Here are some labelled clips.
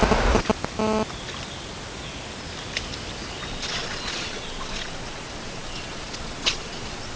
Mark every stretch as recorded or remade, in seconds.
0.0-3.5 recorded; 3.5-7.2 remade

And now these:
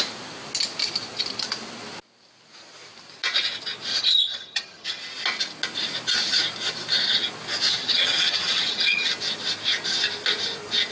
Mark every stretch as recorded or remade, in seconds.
0.0-3.9 recorded; 3.9-5.0 remade; 5.0-7.7 recorded; 7.7-9.1 remade; 9.1-10.9 recorded